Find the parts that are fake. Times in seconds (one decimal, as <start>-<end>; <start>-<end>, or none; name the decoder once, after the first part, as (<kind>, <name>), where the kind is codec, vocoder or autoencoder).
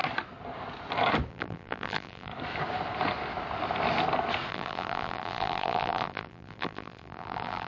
1.3-2.3 (vocoder, BigVGAN v2); 4.5-7.7